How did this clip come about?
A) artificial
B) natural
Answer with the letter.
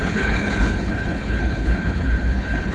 A